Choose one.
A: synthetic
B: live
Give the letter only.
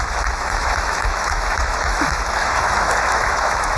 A